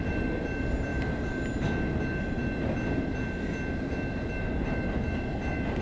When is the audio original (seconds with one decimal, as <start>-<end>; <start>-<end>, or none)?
0.0-5.8